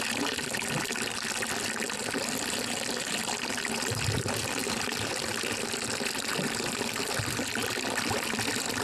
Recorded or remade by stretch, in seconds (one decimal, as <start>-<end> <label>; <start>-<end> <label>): 0.0-8.8 recorded